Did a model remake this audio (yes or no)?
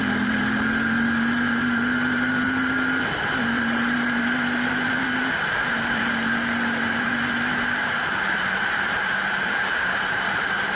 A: yes